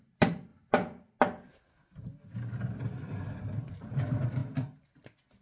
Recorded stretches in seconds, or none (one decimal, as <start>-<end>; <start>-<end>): 0.0-5.4